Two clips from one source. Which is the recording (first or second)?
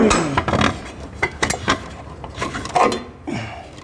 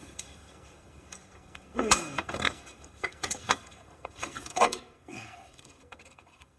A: first